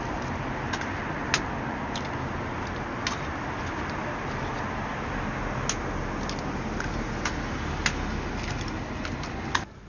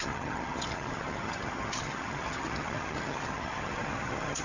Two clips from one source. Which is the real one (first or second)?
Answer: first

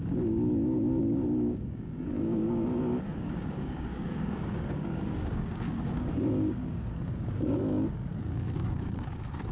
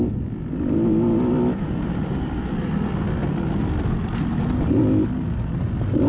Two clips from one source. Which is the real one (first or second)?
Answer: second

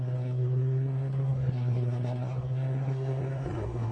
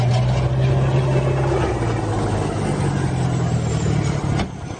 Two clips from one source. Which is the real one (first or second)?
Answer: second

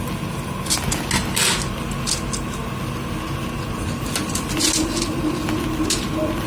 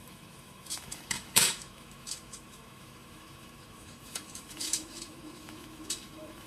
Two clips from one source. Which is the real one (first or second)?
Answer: first